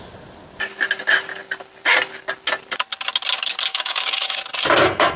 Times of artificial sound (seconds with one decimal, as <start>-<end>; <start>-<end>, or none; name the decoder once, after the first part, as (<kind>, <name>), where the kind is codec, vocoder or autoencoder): 3.7-4.4 (codec, DAC)